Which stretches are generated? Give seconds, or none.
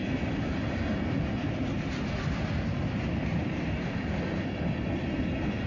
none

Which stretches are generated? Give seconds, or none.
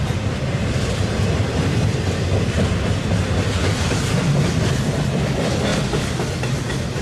none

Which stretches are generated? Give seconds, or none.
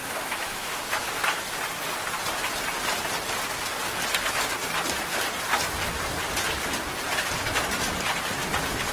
0.0-0.8 (autoencoder, DAC-VAE)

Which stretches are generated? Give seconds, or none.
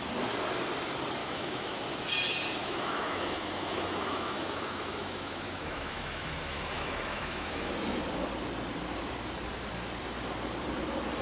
1.2-1.8 (autoencoder, DAC-VAE); 2.6-7.7